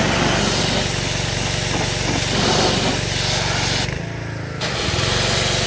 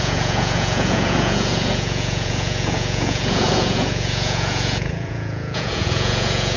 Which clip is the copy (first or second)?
second